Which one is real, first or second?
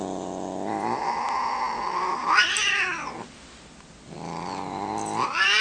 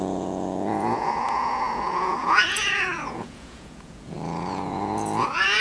first